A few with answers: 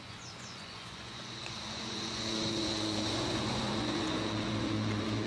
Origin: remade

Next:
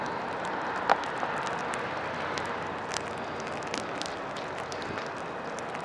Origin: recorded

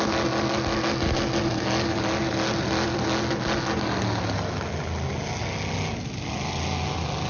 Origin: recorded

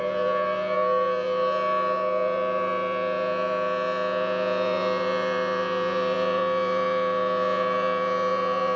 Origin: remade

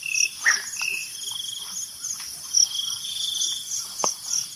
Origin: recorded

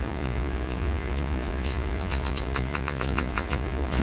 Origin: remade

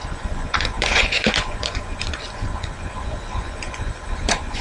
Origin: remade